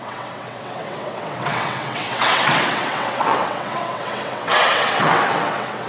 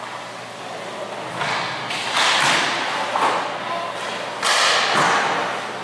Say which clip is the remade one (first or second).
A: first